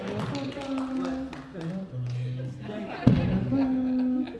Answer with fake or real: real